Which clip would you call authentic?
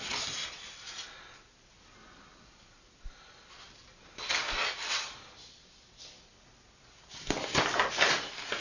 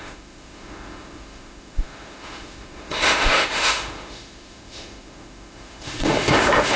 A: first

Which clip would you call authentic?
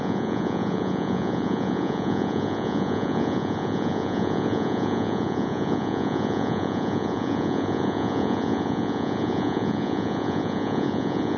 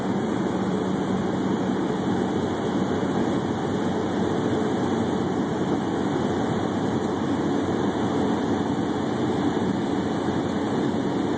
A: second